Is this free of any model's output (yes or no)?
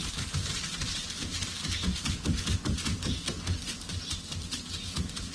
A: yes